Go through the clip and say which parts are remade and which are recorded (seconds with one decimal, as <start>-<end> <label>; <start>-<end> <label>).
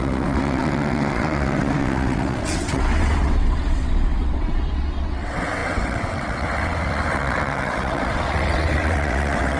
0.0-9.6 remade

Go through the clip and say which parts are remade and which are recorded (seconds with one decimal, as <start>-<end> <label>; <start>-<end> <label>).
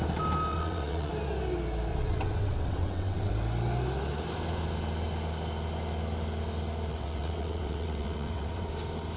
0.0-0.5 recorded; 0.5-1.1 remade; 1.1-1.9 recorded; 1.9-3.3 remade; 3.3-6.9 recorded; 6.9-8.7 remade; 8.7-9.2 recorded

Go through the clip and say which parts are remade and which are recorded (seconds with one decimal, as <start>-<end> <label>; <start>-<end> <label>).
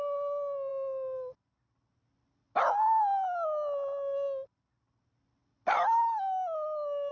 0.0-7.1 recorded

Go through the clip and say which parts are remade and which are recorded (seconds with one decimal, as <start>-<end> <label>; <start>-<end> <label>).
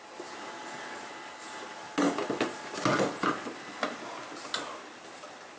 0.0-5.6 recorded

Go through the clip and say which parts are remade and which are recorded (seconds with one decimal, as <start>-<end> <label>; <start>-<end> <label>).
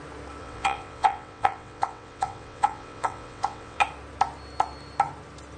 0.0-0.4 recorded; 0.4-3.8 remade; 3.8-5.6 recorded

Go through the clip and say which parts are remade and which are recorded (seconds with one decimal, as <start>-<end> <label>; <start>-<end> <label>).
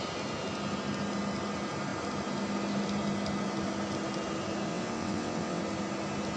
0.0-4.7 recorded; 4.7-5.6 remade; 5.6-6.4 recorded